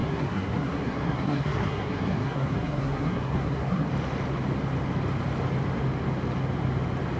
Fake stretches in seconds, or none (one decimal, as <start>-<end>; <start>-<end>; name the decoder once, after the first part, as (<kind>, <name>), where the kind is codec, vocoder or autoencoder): 0.0-3.9 (codec, SNAC)